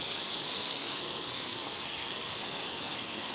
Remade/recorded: remade